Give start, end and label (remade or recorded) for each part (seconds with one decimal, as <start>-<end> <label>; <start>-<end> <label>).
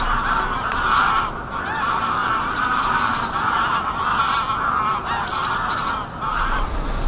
0.0-2.2 recorded; 2.2-4.0 remade; 4.0-4.9 recorded; 4.9-5.5 remade; 5.5-7.1 recorded